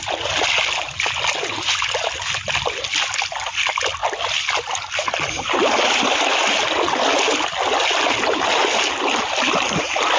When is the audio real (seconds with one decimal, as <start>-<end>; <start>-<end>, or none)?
0.0-10.2